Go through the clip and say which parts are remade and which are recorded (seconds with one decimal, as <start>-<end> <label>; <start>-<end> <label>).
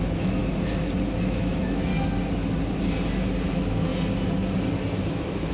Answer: 0.0-0.4 remade; 0.4-1.2 recorded; 1.2-1.9 remade; 1.9-3.5 recorded; 3.5-3.9 remade; 3.9-5.1 recorded; 5.1-5.5 remade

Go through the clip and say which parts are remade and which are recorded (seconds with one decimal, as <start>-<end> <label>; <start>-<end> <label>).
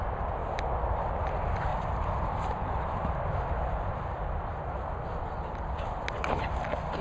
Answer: 0.0-0.4 recorded; 0.4-1.1 remade; 1.1-1.7 recorded; 1.7-5.2 remade; 5.2-7.0 recorded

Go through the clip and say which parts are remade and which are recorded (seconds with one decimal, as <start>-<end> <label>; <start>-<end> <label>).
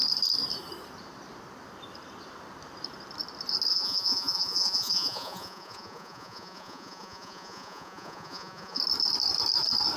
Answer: 0.0-3.7 recorded; 3.7-8.8 remade; 8.8-10.0 recorded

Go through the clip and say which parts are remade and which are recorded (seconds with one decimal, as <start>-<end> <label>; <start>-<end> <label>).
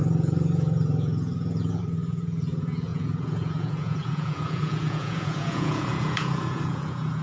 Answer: 0.0-7.2 remade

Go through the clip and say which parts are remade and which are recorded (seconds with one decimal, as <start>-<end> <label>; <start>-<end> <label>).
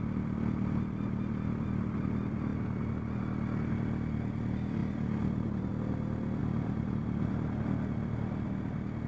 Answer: 0.0-4.8 recorded; 4.8-5.7 remade; 5.7-6.4 recorded; 6.4-7.3 remade; 7.3-9.1 recorded